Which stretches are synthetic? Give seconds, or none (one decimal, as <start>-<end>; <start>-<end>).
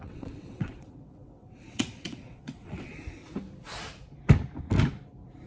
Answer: 0.0-2.9